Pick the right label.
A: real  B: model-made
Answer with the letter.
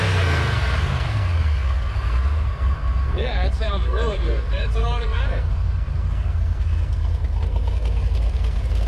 B